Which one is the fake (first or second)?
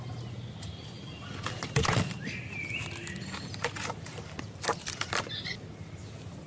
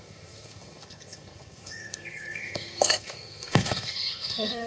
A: second